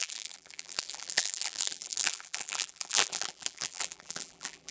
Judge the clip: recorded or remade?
remade